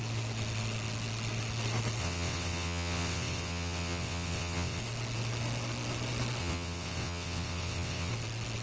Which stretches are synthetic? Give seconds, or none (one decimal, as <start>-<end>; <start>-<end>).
2.0-4.8; 6.4-8.1